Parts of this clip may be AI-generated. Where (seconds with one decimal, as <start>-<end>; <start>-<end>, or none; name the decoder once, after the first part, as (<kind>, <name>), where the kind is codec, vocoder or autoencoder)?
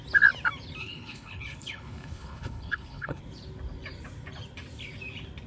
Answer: 0.8-3.2 (codec, HILCodec)